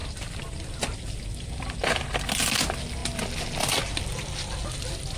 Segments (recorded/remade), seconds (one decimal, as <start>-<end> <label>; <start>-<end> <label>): 0.0-5.2 recorded